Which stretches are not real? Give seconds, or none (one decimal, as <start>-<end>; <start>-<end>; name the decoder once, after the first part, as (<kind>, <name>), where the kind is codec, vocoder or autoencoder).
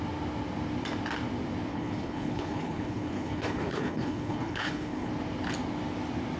1.7-5.1 (codec, HILCodec)